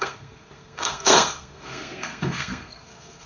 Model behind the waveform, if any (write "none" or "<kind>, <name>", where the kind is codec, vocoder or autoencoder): codec, SNAC